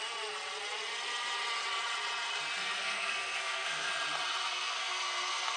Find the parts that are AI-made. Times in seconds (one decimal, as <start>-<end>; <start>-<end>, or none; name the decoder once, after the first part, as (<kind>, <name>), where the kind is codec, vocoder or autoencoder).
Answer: 2.6-3.9 (codec, SNAC); 4.4-5.6